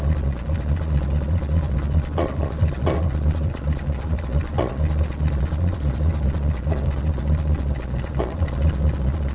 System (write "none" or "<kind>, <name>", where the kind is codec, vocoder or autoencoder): vocoder, Vocos